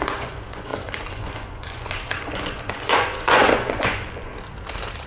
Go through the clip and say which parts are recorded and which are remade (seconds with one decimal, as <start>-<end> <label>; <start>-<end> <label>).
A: 0.0-4.3 remade; 4.3-5.1 recorded